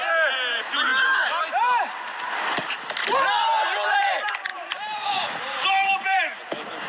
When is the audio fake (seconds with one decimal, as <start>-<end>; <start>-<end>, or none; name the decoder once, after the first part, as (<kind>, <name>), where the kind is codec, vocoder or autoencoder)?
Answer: 4.5-6.4 (vocoder, BigVGAN v2)

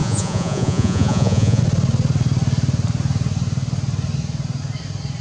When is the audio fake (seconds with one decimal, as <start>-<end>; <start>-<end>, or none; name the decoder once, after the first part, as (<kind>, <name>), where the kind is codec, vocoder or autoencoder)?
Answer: 0.0-1.6 (vocoder, Vocos)

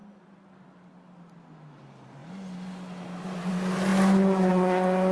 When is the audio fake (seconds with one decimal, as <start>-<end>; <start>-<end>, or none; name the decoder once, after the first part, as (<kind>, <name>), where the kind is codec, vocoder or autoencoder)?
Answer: none